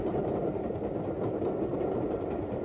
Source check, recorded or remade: recorded